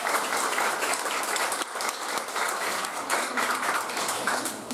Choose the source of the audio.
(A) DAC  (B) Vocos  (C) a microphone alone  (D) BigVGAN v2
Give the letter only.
A